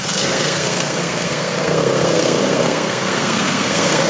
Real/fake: fake